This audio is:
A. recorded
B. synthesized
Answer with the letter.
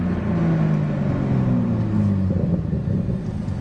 A